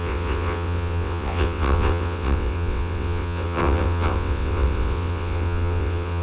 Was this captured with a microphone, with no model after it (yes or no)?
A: no